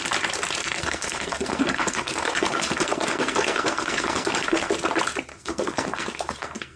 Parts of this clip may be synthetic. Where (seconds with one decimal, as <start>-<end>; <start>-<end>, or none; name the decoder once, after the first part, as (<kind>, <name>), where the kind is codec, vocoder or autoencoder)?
0.6-4.7 (codec, SNAC); 5.3-6.8